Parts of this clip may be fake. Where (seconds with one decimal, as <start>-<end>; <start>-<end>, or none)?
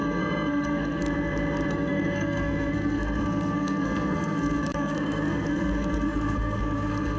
0.0-1.0; 1.7-7.2